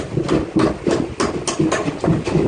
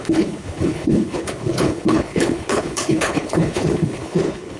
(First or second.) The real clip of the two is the first